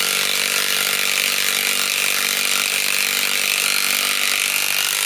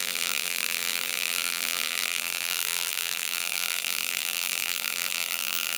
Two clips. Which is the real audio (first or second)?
first